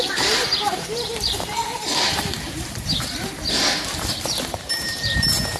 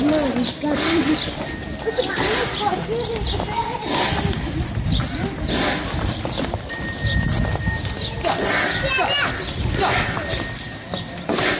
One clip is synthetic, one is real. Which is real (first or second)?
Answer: second